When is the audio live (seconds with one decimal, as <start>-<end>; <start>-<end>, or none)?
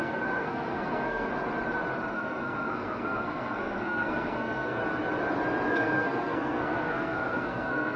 1.3-2.1; 4.8-5.7